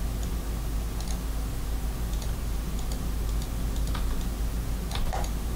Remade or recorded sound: recorded